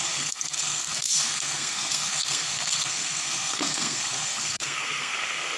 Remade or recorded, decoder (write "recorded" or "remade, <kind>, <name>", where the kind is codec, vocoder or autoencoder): remade, codec, SNAC